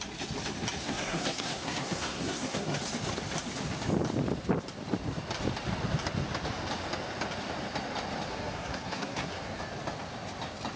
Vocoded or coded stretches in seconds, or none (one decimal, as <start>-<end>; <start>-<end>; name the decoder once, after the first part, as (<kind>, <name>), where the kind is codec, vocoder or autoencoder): 0.8-2.8 (codec, SNAC); 8.3-9.6